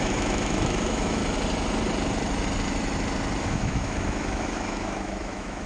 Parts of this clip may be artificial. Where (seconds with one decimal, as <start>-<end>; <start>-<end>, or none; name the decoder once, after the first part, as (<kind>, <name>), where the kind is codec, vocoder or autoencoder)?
0.0-1.2 (autoencoder, DAC-VAE); 3.4-5.7